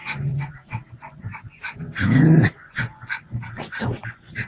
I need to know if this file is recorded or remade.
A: remade